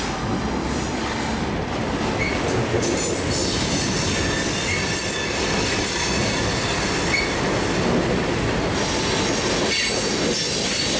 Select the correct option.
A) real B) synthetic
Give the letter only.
A